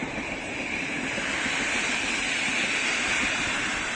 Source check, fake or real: fake